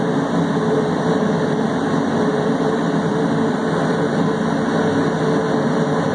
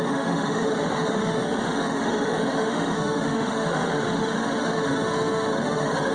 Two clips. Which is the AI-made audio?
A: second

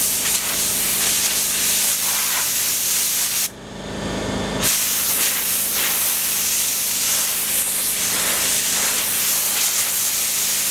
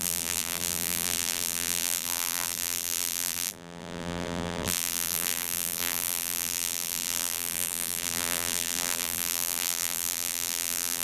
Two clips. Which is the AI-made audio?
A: second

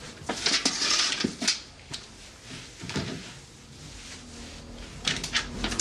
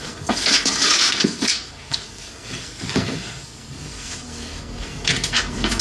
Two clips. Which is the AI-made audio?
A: second